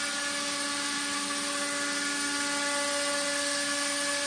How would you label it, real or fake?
real